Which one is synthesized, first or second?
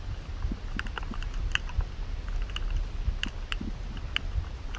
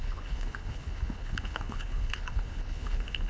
second